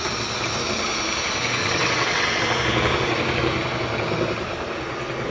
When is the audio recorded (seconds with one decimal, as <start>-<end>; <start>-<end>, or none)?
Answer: 0.0-1.6; 2.4-5.3